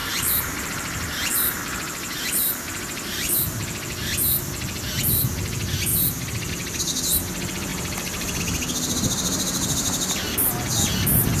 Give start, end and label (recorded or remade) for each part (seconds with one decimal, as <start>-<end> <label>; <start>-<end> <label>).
0.0-3.4 remade; 3.4-5.9 recorded; 5.9-6.5 remade; 6.5-7.7 recorded; 7.7-8.4 remade; 8.4-11.4 recorded